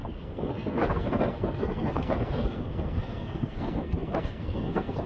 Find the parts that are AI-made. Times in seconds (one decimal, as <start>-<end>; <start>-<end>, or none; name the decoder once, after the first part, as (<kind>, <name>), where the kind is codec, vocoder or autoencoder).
0.0-5.1 (codec, SNAC)